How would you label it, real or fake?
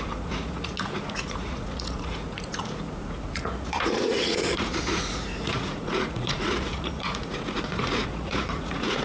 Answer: fake